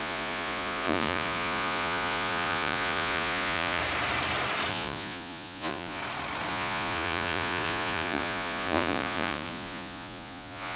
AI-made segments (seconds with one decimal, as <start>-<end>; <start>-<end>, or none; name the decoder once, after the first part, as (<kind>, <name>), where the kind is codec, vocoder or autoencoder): 0.0-3.8 (vocoder, Vocos); 4.7-6.0; 6.5-10.8